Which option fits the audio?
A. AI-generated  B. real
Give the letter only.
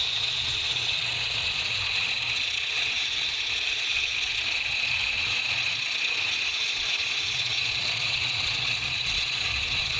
A